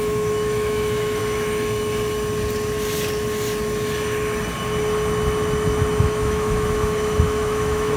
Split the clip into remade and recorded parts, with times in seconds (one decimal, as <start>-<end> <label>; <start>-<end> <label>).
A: 0.0-1.2 remade; 1.2-6.0 recorded; 6.0-8.0 remade